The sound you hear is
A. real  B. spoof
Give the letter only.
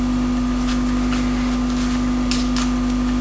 A